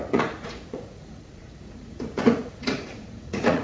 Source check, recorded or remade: remade